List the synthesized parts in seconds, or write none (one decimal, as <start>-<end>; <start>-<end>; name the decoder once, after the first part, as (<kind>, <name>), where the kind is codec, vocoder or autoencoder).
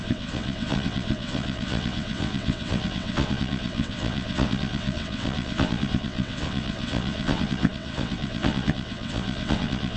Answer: 0.0-10.0 (vocoder, WaveNeXt)